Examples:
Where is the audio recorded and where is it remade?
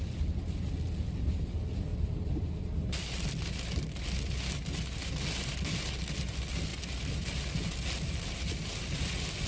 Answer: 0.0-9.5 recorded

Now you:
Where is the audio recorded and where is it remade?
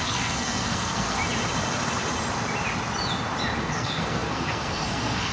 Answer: 0.0-1.2 remade; 1.2-3.6 recorded; 3.6-5.3 remade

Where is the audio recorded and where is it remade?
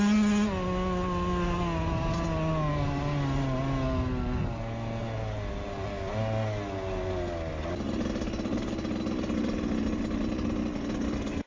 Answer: 0.0-11.5 recorded